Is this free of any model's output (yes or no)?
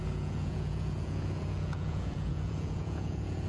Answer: no